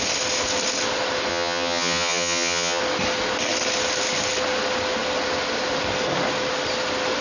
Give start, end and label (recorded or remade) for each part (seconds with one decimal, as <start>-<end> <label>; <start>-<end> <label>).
0.0-1.3 recorded; 1.3-2.8 remade; 2.8-7.2 recorded